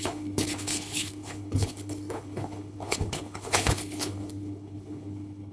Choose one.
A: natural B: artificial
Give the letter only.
B